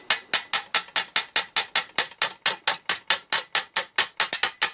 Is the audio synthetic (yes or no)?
no